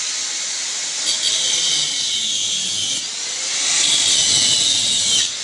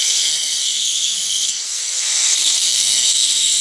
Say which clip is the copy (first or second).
second